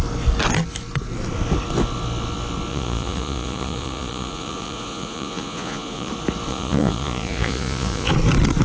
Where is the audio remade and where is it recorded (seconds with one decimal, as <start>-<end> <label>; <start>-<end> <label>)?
0.0-2.7 recorded; 2.7-6.1 remade; 6.1-6.5 recorded; 6.5-8.1 remade; 8.1-8.6 recorded